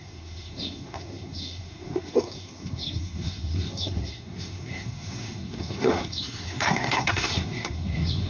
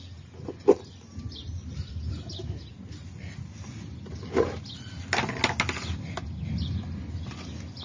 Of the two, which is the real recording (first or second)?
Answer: second